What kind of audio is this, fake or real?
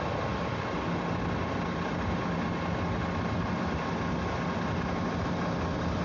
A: real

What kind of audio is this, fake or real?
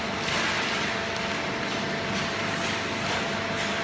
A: real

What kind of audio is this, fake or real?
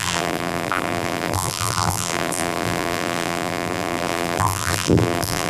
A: fake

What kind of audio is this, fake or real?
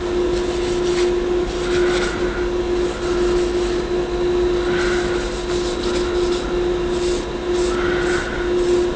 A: real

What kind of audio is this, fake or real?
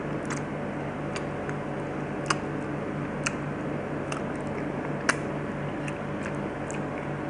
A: real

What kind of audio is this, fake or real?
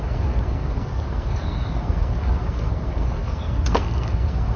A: fake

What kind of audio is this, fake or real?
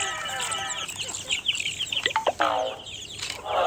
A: real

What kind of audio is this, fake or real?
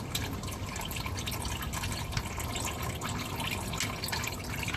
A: real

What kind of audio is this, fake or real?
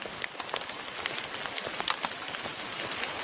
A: real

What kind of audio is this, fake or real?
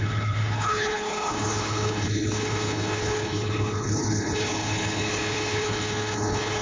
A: fake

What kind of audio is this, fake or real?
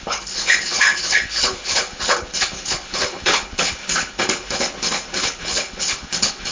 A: fake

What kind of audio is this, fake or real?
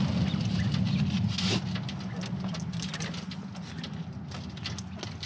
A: real